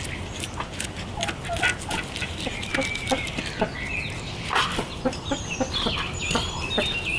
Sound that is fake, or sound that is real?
real